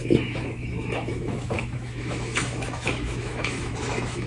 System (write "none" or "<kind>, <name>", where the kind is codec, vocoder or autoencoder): autoencoder, DAC-VAE